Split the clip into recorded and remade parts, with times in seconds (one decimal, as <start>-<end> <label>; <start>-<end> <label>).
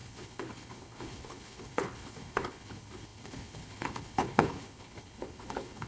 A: 0.0-5.9 remade